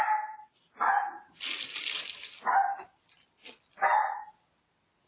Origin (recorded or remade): recorded